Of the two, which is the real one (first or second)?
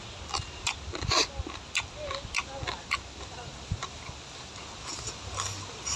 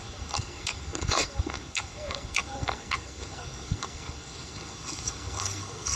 first